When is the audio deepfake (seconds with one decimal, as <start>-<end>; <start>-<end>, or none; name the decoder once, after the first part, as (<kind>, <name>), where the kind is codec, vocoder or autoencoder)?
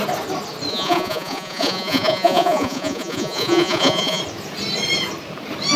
0.7-4.2 (vocoder, Vocos)